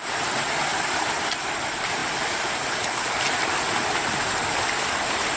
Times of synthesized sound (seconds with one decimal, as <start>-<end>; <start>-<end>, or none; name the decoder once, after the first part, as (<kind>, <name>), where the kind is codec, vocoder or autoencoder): none